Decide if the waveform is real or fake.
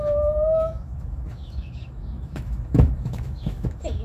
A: fake